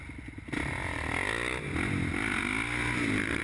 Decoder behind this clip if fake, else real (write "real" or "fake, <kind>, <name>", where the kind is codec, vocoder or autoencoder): real